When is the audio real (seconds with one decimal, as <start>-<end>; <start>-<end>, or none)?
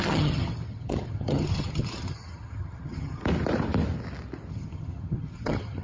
3.2-4.5